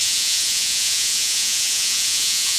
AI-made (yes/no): yes